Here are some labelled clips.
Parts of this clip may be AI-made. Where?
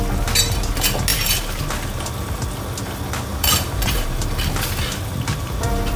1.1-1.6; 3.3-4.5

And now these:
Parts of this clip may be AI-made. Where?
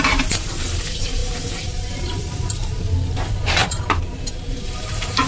0.0-5.3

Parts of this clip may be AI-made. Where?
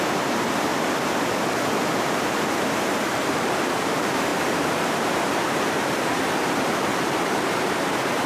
0.0-0.7; 2.0-8.3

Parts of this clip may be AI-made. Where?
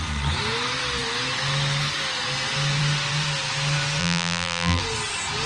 4.0-4.8